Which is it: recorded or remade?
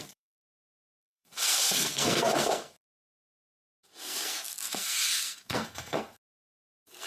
remade